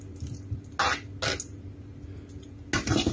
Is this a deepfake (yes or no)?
no